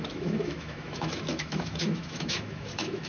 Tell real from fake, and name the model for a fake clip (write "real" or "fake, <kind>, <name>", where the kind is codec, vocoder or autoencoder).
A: fake, autoencoder, DAC-VAE